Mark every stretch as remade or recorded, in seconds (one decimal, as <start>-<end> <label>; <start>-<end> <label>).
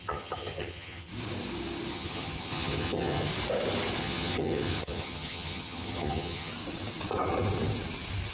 0.0-1.1 remade; 1.1-1.9 recorded; 1.9-3.3 remade; 3.3-4.0 recorded; 4.0-6.5 remade; 6.5-8.3 recorded